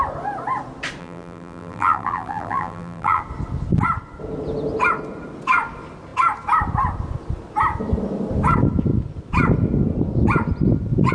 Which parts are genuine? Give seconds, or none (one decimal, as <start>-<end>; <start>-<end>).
0.0-1.0; 3.2-11.1